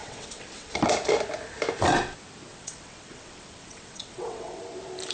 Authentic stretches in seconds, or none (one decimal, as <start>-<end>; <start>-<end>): 0.8-2.5; 4.6-5.1